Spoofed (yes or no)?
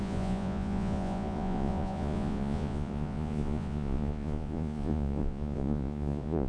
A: yes